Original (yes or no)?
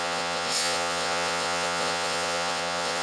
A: no